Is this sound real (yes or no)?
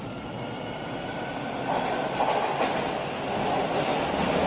yes